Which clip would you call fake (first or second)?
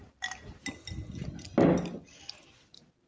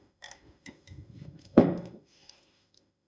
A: second